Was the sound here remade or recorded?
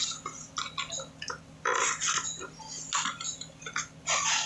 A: recorded